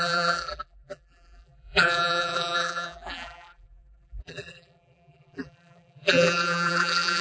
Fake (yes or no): yes